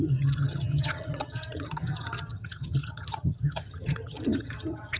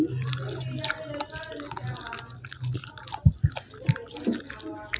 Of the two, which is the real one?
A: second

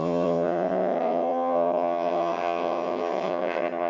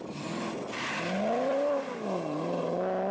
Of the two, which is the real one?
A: second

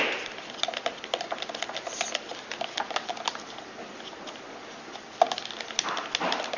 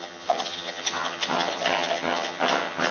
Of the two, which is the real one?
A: first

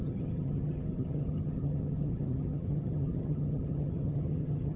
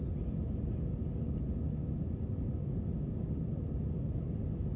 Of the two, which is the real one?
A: second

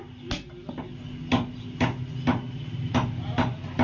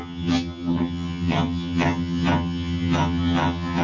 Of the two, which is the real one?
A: first